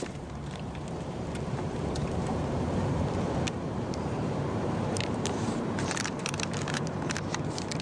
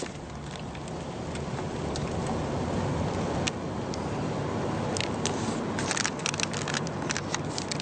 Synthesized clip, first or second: first